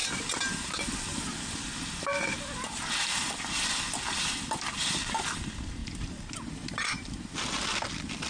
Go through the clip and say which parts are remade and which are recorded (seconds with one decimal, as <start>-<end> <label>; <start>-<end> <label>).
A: 0.0-8.3 recorded